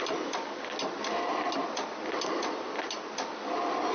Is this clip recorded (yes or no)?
yes